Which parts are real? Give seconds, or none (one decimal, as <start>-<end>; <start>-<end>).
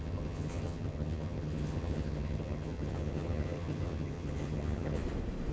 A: 5.0-5.5